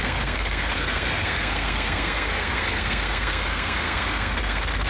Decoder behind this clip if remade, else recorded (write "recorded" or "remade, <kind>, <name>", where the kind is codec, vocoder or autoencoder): remade, codec, SNAC